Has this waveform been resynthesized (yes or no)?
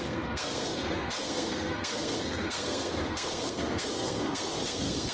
yes